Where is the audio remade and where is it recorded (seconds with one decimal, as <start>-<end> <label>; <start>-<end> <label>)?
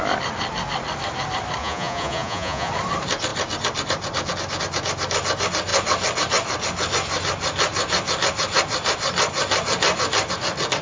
0.0-1.6 recorded; 1.6-2.7 remade; 2.7-10.8 recorded